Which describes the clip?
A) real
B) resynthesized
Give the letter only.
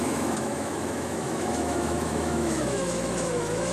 B